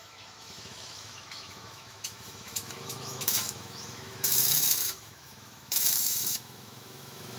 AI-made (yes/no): yes